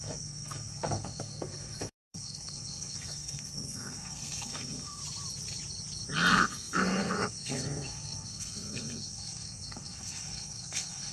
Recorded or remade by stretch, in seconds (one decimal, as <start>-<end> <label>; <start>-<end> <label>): 0.0-5.0 remade; 5.0-6.3 recorded; 6.3-11.1 remade

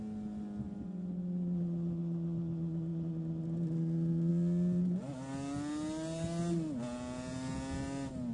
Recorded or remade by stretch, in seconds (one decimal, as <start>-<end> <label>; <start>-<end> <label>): 0.0-8.3 recorded

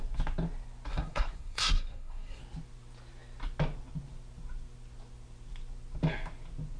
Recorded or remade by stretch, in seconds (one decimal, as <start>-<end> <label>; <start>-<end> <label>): 0.0-0.9 recorded; 0.9-2.4 remade; 2.4-6.8 recorded

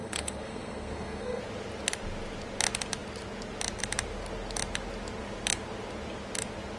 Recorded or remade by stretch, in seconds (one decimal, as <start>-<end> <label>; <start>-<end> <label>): 0.0-1.4 remade; 1.4-6.8 recorded